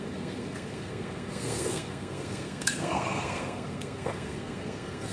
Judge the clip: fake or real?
fake